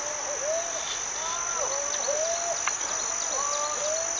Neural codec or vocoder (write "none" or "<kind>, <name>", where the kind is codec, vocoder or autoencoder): none